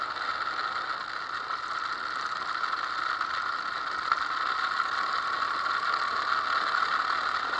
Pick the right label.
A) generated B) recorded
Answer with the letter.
B